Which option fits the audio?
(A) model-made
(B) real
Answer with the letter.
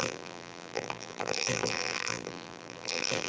A